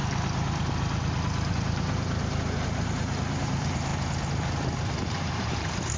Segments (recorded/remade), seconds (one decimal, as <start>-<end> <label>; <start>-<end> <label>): 0.0-1.5 recorded; 1.5-3.9 remade; 3.9-4.9 recorded; 4.9-6.0 remade